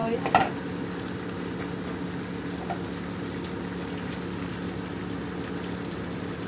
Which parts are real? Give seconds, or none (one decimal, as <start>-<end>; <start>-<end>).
0.0-6.5